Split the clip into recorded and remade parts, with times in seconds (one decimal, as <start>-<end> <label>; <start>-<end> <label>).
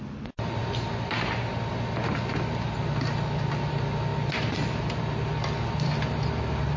0.0-0.6 remade; 0.6-3.5 recorded; 3.5-4.1 remade; 4.1-4.8 recorded; 4.8-6.8 remade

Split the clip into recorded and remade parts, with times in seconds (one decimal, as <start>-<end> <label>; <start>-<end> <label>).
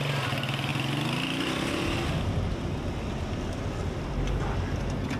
0.0-5.2 recorded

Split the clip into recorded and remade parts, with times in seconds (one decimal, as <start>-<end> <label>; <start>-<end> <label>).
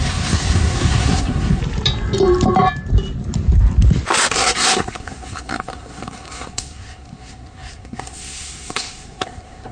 0.0-1.6 remade; 1.6-4.3 recorded; 4.3-9.7 remade